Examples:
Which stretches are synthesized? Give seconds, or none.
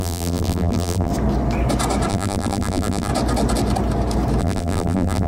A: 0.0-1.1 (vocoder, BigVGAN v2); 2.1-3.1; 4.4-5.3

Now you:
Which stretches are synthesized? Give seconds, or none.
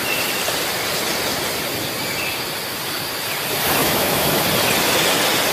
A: 3.8-4.4 (autoencoder, DAC-VAE)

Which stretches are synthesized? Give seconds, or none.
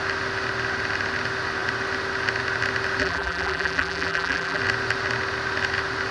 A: 3.0-4.6 (vocoder, BigVGAN v2)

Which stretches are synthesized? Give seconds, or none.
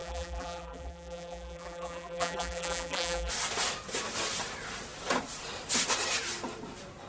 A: 0.0-3.3 (vocoder, BigVGAN v2)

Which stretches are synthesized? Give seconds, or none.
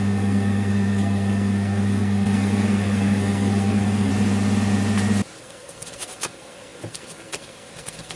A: 0.0-4.1 (codec, SNAC); 5.4-8.2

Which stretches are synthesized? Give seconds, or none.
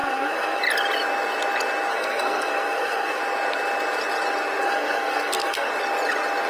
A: 0.0-0.6 (codec, SNAC); 1.9-3.2; 4.6-5.7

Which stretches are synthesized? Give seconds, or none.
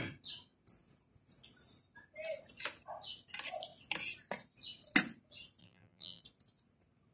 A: 5.6-6.2 (vocoder, BigVGAN v2)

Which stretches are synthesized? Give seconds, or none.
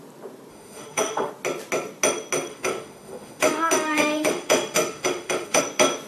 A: 0.5-1.3 (autoencoder, DAC-VAE); 2.5-5.6